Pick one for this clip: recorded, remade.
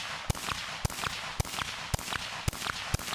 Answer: recorded